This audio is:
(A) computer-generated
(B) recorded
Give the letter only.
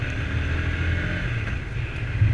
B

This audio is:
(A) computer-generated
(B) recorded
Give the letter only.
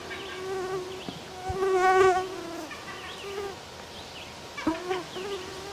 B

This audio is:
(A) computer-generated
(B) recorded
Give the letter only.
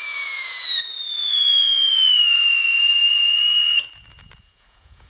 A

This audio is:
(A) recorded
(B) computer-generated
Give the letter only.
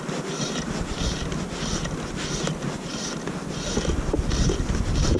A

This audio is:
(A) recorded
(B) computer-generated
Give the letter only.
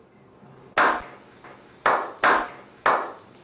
A